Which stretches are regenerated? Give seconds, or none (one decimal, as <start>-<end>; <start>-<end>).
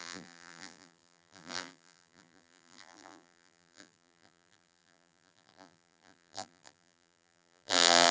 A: 0.0-8.1